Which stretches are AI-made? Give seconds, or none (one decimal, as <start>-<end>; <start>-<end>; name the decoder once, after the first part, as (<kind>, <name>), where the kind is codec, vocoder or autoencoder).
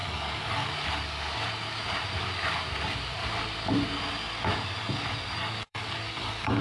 0.0-0.7 (codec, DAC); 5.4-6.6